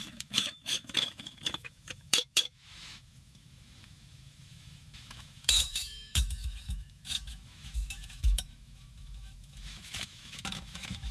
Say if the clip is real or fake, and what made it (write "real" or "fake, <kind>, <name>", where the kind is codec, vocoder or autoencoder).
fake, autoencoder, DAC-VAE